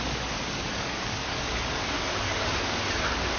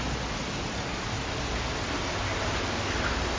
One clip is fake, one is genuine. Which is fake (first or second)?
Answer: first